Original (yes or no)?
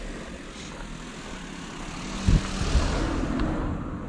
yes